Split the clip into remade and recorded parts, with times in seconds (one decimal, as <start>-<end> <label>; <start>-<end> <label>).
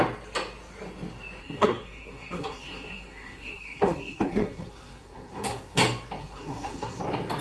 0.0-1.4 recorded; 1.4-5.8 remade; 5.8-6.2 recorded; 6.2-7.0 remade; 7.0-7.4 recorded